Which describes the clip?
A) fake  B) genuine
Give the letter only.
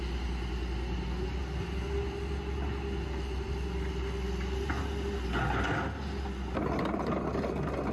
B